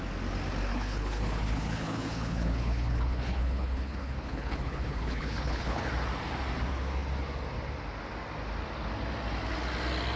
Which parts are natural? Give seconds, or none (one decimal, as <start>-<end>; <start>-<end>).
0.0-0.7; 5.9-10.2